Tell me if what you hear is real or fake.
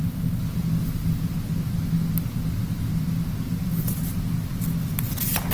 real